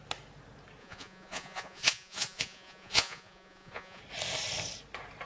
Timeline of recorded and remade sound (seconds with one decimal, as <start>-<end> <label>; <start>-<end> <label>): 0.0-0.8 recorded; 0.8-4.0 remade; 4.0-5.3 recorded